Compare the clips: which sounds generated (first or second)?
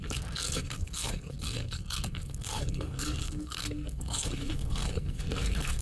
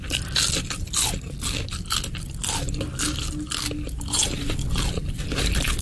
first